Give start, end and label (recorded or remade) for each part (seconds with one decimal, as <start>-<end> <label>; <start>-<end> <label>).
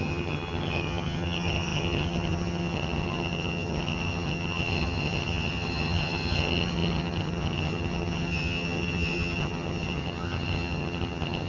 0.0-11.5 remade